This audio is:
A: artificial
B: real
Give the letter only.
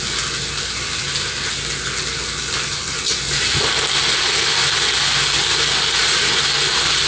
B